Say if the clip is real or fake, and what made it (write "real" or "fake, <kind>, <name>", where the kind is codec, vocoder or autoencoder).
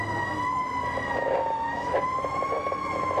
real